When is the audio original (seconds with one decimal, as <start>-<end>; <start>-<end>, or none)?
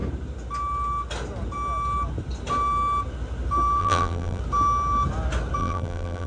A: 0.0-3.8; 4.4-5.6